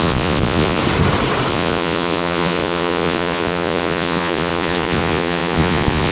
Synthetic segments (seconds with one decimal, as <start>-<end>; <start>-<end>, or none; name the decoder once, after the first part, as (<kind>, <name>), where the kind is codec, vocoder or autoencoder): 0.0-0.8 (vocoder, Vocos); 1.5-6.1